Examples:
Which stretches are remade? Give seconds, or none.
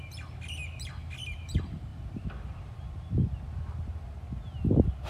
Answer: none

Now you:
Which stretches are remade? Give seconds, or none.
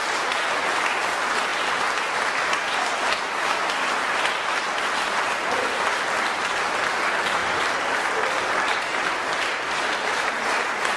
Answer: 7.4-8.1 (vocoder, BigVGAN v2); 8.9-10.3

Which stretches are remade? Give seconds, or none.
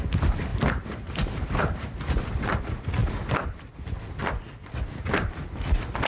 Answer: 0.5-2.6 (vocoder, BigVGAN v2); 3.0-4.3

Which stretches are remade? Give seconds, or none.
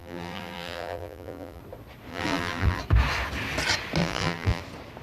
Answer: 0.0-1.6 (vocoder, BigVGAN v2); 2.1-2.8; 4.0-4.6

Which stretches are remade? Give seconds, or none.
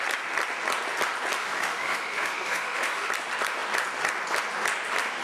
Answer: 1.4-3.1 (autoencoder, DAC-VAE)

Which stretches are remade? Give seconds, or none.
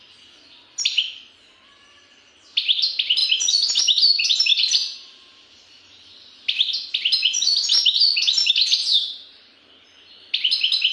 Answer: 4.5-6.3 (vocoder, BigVGAN v2); 8.4-10.2